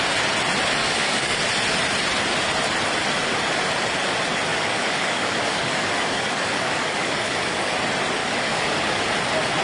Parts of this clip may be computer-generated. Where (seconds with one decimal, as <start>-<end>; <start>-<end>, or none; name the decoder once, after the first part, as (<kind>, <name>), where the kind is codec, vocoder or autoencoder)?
0.8-1.4 (codec, DAC); 4.5-7.7; 8.2-9.0